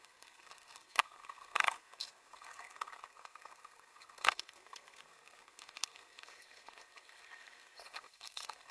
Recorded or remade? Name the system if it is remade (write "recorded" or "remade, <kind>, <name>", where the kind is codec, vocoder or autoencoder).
remade, codec, SNAC